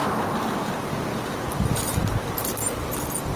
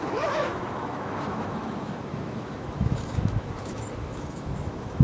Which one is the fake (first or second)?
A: second